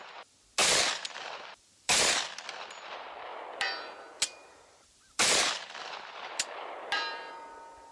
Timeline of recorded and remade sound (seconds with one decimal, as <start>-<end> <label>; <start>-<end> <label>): 0.0-0.6 recorded; 0.6-2.5 remade; 2.5-3.3 recorded; 3.3-7.3 remade; 7.3-7.9 recorded